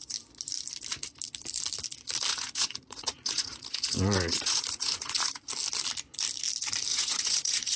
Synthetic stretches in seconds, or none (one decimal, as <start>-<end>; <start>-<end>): 2.3-5.5; 6.9-7.8